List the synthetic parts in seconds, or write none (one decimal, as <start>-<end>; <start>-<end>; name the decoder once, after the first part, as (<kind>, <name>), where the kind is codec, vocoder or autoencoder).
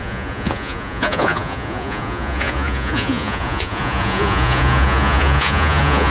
0.0-6.1 (vocoder, Vocos)